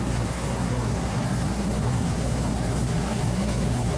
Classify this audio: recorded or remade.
remade